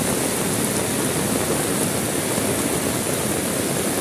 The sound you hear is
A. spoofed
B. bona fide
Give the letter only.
B